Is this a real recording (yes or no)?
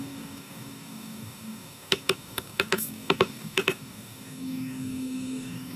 no